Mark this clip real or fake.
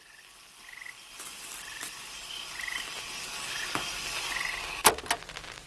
real